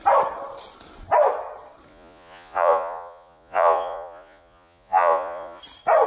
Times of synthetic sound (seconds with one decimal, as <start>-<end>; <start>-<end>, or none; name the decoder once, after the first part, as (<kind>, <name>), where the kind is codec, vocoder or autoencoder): 1.9-5.6 (vocoder, Vocos)